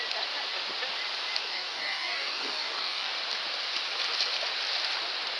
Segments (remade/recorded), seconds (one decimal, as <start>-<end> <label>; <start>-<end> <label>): 0.0-1.4 recorded; 1.4-3.1 remade; 3.1-5.4 recorded